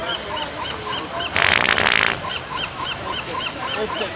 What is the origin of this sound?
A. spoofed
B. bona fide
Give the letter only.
A